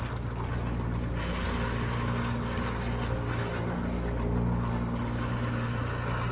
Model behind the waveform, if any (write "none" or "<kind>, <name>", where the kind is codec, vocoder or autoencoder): none